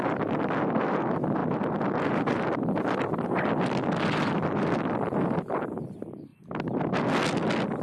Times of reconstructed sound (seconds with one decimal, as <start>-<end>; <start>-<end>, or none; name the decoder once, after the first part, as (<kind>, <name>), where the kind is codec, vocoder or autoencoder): none